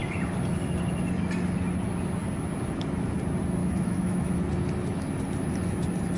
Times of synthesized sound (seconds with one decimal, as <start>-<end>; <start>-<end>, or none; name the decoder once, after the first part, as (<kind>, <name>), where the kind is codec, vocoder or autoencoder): 3.6-4.3 (autoencoder, DAC-VAE)